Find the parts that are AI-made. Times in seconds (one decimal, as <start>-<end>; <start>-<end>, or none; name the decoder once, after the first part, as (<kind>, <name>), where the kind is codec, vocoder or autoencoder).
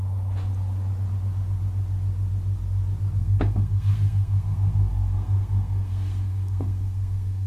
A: 3.2-7.5 (codec, SNAC)